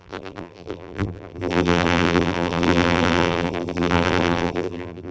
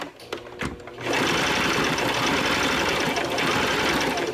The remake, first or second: first